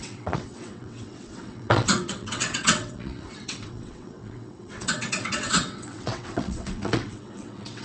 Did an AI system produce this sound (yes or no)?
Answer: yes